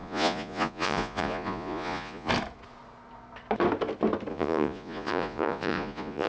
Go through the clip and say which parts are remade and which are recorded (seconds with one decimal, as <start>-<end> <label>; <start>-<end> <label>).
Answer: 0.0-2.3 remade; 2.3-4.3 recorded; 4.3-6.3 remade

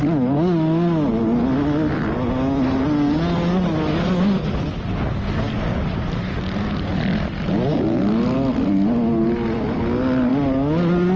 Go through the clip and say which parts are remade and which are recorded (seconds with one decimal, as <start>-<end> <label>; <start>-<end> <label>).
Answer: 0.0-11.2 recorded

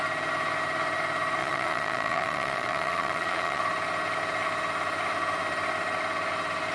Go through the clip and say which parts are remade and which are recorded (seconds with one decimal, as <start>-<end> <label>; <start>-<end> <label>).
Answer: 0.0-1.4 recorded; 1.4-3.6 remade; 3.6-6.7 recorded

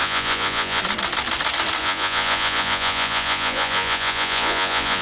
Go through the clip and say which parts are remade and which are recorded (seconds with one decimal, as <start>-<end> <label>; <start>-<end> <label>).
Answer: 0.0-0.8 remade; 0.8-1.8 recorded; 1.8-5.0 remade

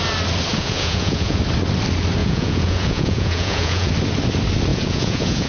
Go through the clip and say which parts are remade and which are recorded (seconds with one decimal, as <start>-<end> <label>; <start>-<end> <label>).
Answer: 0.0-0.5 recorded; 0.5-1.4 remade; 1.4-2.2 recorded; 2.2-3.9 remade; 3.9-4.7 recorded; 4.7-5.5 remade

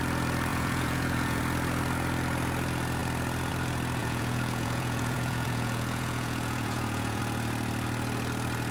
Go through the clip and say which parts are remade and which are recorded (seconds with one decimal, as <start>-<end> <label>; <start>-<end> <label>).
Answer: 0.0-0.5 recorded; 0.5-1.4 remade; 1.4-4.0 recorded; 4.0-7.2 remade; 7.2-8.7 recorded